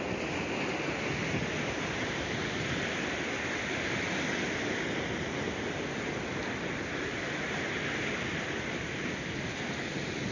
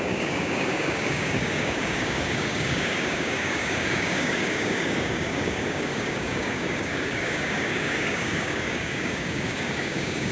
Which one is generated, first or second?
second